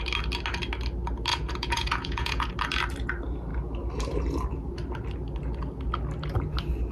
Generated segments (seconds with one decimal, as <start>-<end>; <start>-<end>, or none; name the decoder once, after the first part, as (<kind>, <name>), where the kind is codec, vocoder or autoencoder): 1.3-2.5 (vocoder, Vocos)